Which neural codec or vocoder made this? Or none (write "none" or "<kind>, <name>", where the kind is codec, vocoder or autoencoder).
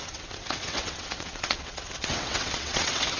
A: vocoder, WaveNeXt